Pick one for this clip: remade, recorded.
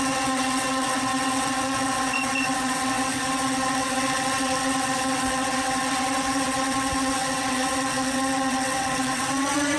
remade